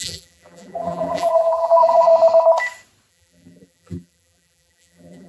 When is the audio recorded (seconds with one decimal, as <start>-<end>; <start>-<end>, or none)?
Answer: 2.1-3.1